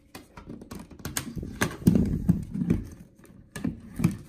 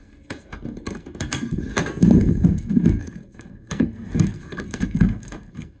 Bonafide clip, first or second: first